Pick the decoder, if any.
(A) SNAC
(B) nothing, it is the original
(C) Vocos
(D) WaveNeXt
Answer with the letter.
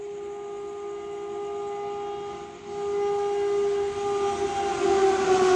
B